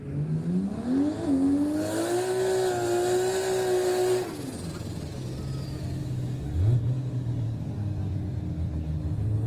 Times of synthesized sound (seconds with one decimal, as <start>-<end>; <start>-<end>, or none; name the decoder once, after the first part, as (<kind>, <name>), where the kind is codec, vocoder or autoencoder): 6.0-7.7 (codec, DAC)